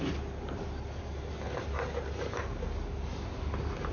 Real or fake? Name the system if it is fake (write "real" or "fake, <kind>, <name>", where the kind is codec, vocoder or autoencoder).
real